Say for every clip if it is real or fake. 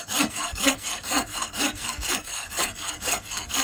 fake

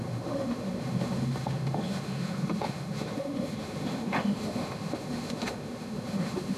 fake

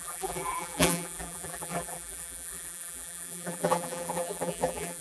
fake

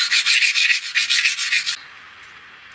real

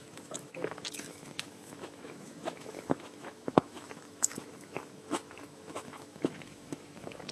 fake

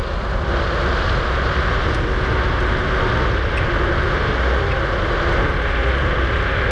real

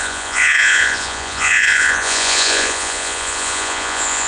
fake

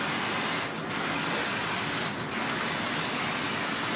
real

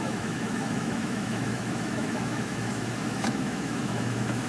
fake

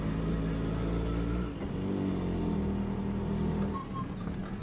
real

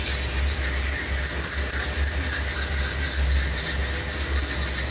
real